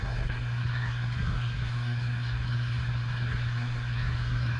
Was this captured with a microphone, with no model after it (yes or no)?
no